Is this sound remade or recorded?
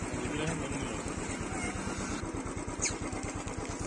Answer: recorded